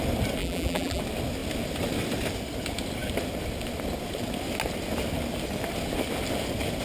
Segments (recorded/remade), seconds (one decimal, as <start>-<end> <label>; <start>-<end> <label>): 0.0-0.4 recorded; 0.4-1.0 remade; 1.0-6.8 recorded